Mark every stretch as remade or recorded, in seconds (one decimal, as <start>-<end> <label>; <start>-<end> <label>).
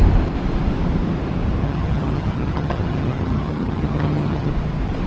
0.0-1.6 recorded; 1.6-4.5 remade; 4.5-5.1 recorded